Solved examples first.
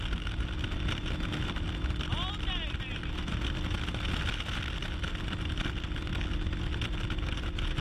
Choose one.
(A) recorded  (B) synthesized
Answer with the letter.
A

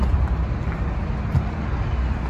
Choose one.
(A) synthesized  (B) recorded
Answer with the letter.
B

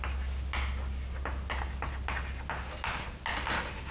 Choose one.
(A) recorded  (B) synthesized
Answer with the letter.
A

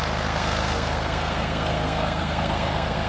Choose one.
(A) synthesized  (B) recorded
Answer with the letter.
A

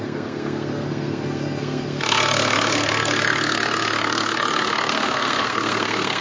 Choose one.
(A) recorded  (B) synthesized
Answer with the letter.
B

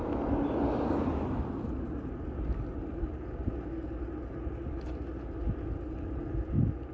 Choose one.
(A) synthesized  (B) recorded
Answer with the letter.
B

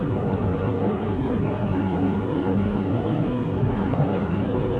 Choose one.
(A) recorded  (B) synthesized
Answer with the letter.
B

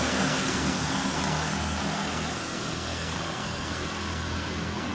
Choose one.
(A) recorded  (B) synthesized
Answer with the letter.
B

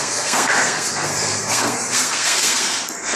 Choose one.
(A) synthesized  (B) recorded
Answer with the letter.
A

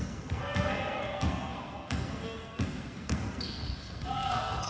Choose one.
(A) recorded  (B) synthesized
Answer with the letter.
B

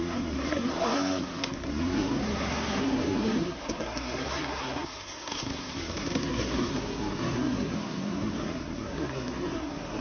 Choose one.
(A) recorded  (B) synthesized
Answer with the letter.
B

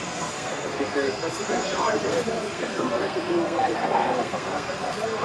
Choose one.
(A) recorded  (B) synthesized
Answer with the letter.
B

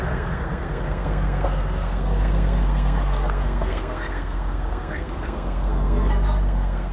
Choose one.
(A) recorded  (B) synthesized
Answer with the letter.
B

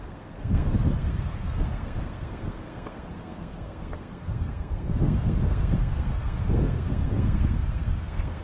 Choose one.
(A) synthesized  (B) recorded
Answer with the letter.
A